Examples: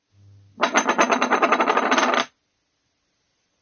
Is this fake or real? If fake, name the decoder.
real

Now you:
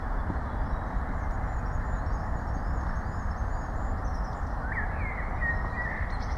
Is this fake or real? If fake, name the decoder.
real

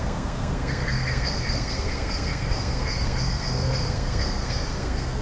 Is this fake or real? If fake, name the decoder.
fake, codec, SNAC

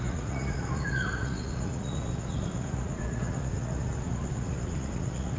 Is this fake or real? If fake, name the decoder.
fake, vocoder, Vocos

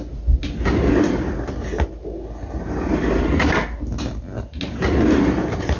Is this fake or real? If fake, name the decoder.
real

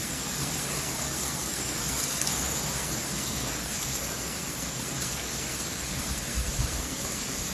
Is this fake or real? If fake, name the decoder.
fake, codec, SNAC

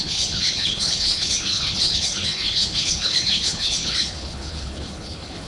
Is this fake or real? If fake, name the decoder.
fake, codec, HILCodec